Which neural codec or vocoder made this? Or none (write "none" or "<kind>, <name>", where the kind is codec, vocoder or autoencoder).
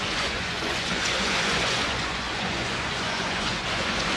vocoder, Vocos